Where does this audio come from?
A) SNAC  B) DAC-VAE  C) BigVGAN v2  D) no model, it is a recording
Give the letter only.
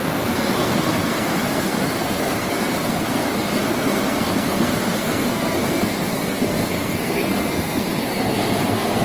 A